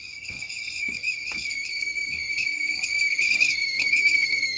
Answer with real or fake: fake